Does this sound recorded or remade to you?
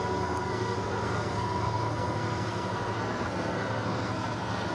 remade